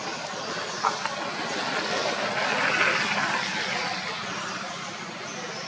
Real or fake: real